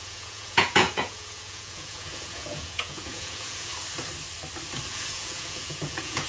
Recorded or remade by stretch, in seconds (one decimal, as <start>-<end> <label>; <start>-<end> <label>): 0.0-3.7 remade; 3.7-4.9 recorded; 4.9-6.3 remade